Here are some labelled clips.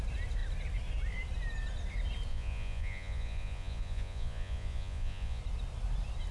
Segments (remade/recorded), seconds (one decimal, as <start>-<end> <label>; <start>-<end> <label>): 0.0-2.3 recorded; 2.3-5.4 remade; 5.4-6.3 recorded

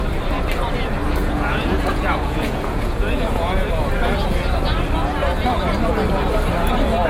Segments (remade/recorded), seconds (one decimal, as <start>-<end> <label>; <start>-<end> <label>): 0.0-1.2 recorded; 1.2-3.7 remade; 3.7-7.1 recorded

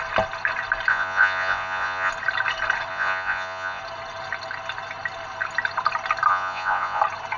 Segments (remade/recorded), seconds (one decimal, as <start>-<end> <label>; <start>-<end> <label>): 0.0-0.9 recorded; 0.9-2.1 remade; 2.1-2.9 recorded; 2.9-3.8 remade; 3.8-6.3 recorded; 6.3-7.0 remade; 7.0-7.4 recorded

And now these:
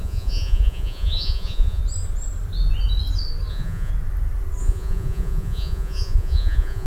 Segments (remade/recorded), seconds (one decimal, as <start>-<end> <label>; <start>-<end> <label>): 0.0-1.8 remade; 1.8-3.5 recorded; 3.5-3.9 remade; 3.9-4.6 recorded; 4.6-6.9 remade

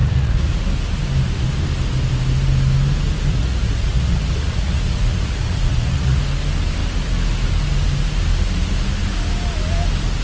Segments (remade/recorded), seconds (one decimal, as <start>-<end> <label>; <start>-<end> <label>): 0.0-0.6 remade; 0.6-3.3 recorded; 3.3-6.2 remade; 6.2-10.2 recorded

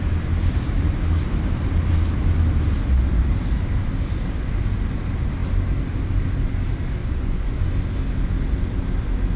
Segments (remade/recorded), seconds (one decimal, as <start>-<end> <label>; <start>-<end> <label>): 0.0-7.0 recorded; 7.0-7.6 remade; 7.6-9.4 recorded

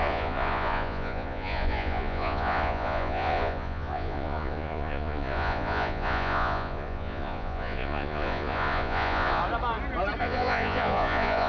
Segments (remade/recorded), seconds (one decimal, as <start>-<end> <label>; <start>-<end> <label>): 0.0-9.4 remade; 9.4-10.2 recorded; 10.2-11.5 remade

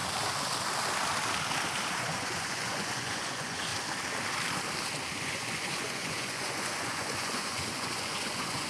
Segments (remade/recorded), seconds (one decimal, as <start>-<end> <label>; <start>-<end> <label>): 0.0-2.0 recorded; 2.0-3.7 remade; 3.7-5.2 recorded; 5.2-8.7 remade